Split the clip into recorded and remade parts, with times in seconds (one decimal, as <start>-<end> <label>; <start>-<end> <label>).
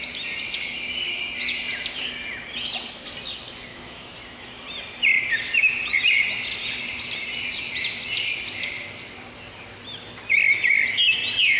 0.0-3.7 recorded; 3.7-4.6 remade; 4.6-11.6 recorded